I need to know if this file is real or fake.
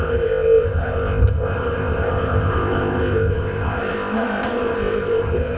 fake